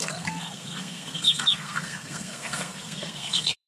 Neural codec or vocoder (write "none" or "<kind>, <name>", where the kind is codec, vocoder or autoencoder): codec, SNAC